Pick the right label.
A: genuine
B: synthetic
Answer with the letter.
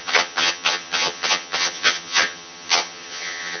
B